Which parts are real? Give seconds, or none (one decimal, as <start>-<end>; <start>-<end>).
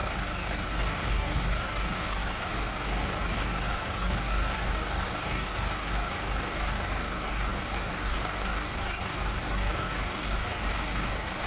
none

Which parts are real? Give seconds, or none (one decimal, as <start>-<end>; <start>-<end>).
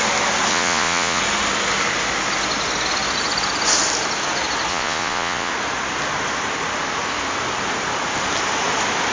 0.0-0.5; 1.2-4.7; 5.5-9.1